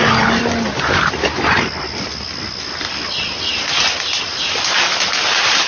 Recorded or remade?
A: recorded